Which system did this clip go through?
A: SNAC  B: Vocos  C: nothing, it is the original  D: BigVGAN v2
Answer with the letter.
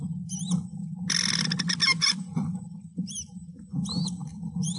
C